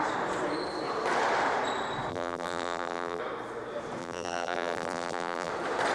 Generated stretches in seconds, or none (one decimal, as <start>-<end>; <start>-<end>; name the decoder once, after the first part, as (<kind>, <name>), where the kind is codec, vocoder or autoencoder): 2.1-3.2 (vocoder, BigVGAN v2); 4.0-5.5

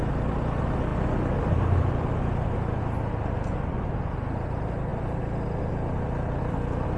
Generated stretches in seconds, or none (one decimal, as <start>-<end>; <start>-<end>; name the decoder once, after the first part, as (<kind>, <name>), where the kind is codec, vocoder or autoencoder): none

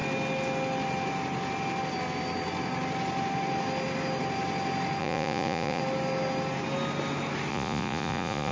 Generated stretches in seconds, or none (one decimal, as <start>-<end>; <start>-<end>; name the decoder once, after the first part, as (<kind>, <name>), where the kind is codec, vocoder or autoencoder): 5.0-5.8 (vocoder, Vocos); 7.5-8.5